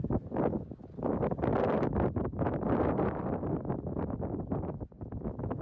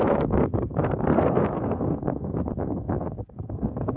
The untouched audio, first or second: first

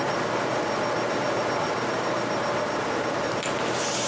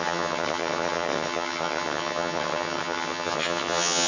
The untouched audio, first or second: first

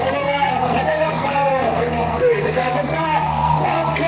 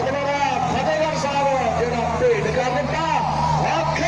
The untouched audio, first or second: second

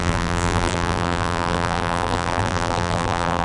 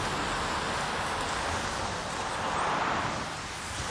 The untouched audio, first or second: second